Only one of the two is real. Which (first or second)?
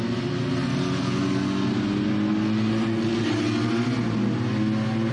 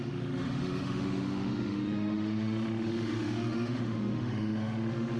first